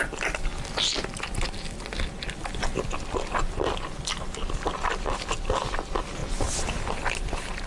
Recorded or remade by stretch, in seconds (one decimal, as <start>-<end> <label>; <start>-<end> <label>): 0.0-7.7 recorded